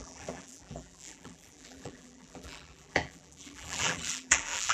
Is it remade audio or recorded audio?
remade